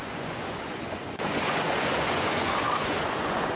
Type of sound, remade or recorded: remade